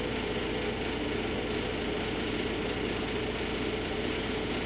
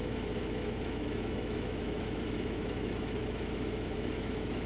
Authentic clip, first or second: first